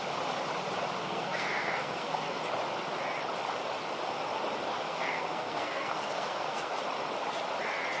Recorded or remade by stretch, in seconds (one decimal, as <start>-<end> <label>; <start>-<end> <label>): 0.0-1.0 recorded; 1.0-2.4 remade; 2.4-4.7 recorded; 4.7-6.8 remade; 6.8-8.0 recorded